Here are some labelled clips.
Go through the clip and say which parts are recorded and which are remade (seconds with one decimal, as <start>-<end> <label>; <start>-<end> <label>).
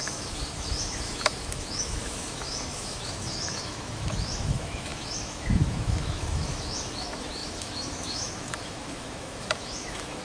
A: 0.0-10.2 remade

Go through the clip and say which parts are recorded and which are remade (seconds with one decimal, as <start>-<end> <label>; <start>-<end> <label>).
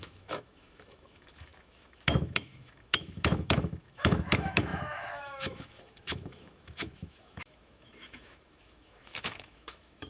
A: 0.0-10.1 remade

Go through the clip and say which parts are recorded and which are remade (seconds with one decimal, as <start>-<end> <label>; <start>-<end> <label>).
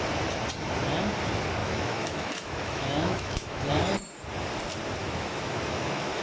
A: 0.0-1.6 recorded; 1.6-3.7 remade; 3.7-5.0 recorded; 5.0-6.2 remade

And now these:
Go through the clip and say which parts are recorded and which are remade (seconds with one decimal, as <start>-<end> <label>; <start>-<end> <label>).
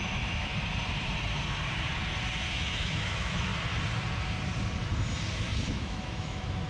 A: 0.0-0.5 remade; 0.5-2.5 recorded; 2.5-3.5 remade; 3.5-5.4 recorded; 5.4-6.7 remade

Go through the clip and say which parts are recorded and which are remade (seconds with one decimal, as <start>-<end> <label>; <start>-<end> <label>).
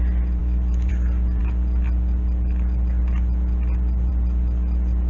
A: 0.0-0.4 recorded; 0.4-0.9 remade; 0.9-5.1 recorded